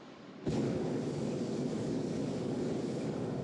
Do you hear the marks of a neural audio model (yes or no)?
yes